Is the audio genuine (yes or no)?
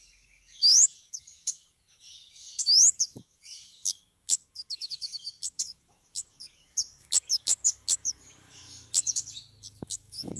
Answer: no